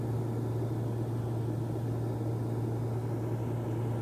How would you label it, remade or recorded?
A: recorded